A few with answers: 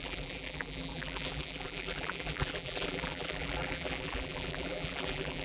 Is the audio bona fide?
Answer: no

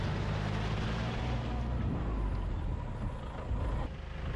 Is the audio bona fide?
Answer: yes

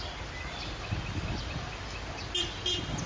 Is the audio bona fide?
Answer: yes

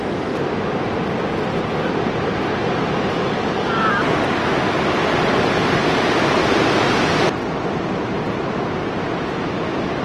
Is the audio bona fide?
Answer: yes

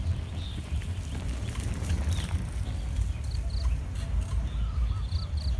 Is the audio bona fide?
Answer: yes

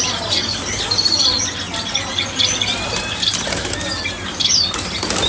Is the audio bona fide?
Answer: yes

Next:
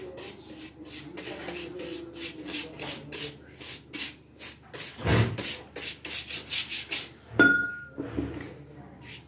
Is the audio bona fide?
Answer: yes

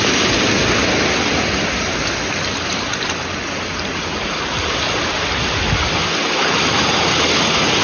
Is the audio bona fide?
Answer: yes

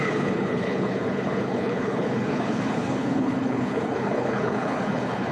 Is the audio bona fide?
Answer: no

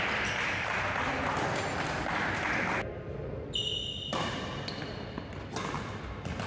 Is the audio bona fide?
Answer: yes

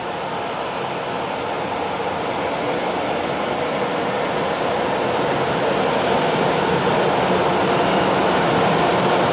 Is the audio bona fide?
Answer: yes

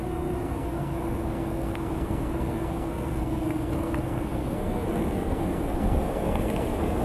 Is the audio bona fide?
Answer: no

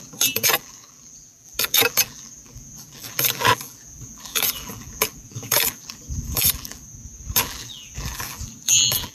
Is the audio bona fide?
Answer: no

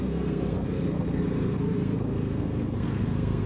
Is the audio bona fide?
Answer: no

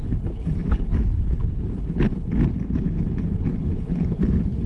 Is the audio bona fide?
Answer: no